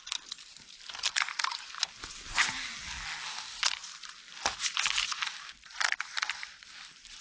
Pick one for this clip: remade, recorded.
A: recorded